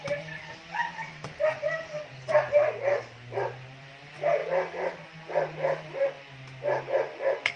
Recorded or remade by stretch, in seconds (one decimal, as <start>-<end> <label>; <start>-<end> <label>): 0.0-3.9 remade; 3.9-7.6 recorded